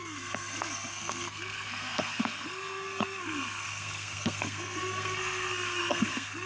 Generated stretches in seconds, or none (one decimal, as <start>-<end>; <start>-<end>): 0.0-6.5